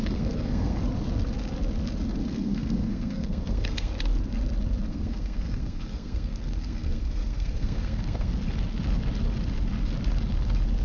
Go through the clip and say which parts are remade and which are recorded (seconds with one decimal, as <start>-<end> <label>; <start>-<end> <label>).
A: 0.0-0.8 remade; 0.8-2.2 recorded; 2.2-3.9 remade; 3.9-4.9 recorded; 4.9-8.3 remade; 8.3-10.8 recorded